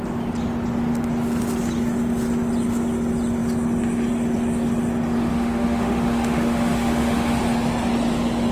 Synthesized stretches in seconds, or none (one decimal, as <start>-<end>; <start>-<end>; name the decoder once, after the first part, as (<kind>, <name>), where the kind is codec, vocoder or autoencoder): 5.3-7.4 (autoencoder, DAC-VAE)